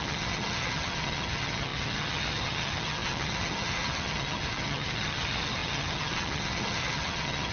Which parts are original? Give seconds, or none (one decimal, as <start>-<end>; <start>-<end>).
none